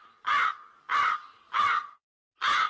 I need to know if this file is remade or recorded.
recorded